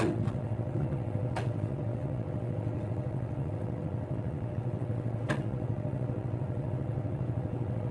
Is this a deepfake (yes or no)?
yes